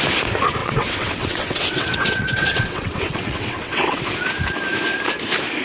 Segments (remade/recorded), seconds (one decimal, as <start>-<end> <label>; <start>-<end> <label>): 0.0-0.6 recorded; 0.6-4.0 remade; 4.0-5.6 recorded